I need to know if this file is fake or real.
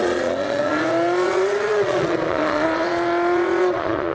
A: fake